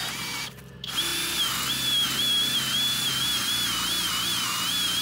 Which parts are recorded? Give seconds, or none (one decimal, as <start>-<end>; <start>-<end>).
0.0-5.0